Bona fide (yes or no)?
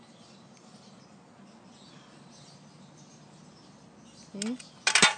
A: yes